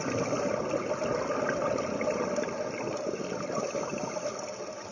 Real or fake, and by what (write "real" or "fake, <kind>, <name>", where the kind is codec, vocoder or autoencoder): real